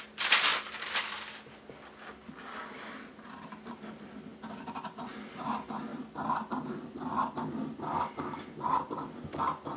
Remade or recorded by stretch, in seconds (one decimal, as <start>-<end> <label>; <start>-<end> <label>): 0.0-9.8 recorded